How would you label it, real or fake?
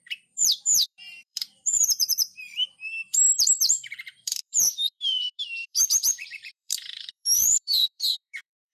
fake